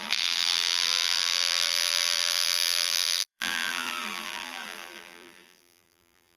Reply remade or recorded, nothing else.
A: remade